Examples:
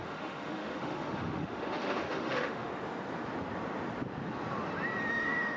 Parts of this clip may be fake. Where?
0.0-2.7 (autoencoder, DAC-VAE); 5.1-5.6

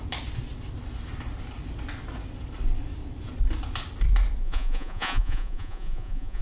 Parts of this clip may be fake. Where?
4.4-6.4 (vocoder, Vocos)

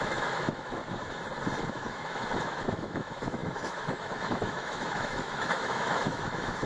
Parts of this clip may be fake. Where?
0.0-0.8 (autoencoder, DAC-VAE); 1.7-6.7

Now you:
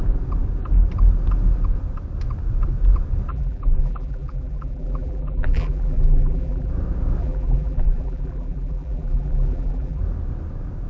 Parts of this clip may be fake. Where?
3.3-6.7 (vocoder, BigVGAN v2); 7.2-10.0

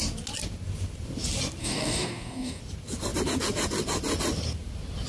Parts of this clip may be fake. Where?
1.6-2.6 (codec, DAC)

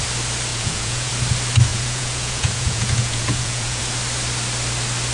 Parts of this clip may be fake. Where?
0.5-1.1 (vocoder, Vocos); 1.7-3.8

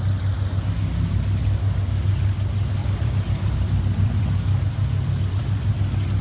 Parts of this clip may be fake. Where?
2.8-5.7 (vocoder, BigVGAN v2)